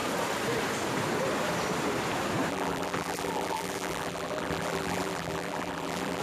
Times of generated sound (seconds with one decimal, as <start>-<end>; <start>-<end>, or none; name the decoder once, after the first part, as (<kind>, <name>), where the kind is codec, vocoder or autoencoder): 2.5-6.2 (vocoder, BigVGAN v2)